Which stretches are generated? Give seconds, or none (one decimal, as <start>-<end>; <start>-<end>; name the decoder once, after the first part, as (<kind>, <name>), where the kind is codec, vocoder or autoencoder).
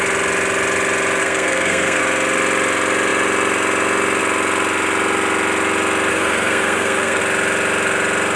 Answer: 1.2-2.0 (codec, SNAC); 6.1-7.2